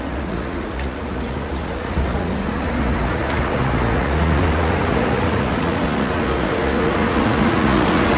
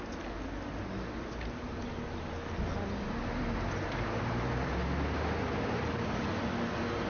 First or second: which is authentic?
second